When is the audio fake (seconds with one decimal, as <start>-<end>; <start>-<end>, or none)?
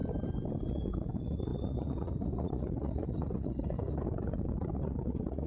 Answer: 0.7-5.5